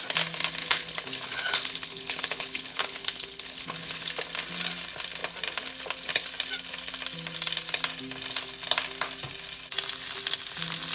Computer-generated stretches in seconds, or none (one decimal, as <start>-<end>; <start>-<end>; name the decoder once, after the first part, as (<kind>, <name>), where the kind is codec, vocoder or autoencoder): 0.6-4.1 (codec, HILCodec)